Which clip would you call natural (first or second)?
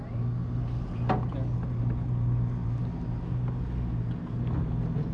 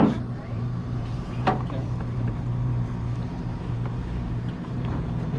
first